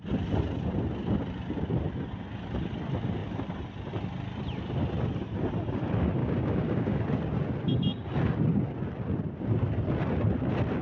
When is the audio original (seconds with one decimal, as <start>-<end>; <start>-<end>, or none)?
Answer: 0.0-6.2; 7.0-10.8

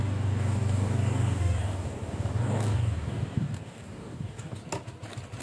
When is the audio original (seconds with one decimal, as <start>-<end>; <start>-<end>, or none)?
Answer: 4.6-5.4

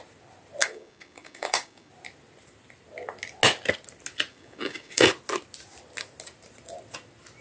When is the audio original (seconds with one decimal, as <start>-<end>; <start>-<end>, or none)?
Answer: 0.0-0.6; 1.9-4.3; 5.1-7.4

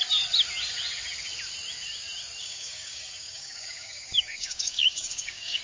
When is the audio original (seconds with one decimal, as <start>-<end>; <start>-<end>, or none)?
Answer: 0.0-2.4

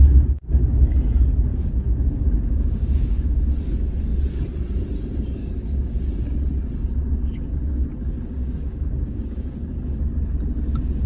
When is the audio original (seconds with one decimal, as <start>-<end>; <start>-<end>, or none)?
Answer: 0.0-1.5; 3.5-5.4; 6.0-8.4; 9.7-11.1

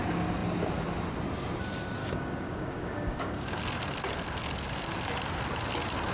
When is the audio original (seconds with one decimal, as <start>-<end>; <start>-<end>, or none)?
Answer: 0.0-2.0; 3.6-6.1